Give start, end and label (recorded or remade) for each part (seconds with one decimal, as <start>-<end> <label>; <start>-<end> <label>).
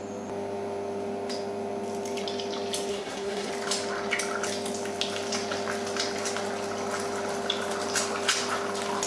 0.0-2.9 recorded; 2.9-3.5 remade; 3.5-9.1 recorded